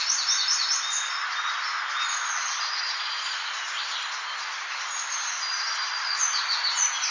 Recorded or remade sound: recorded